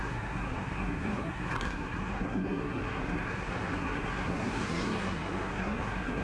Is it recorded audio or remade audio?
remade